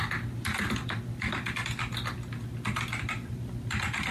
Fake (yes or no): no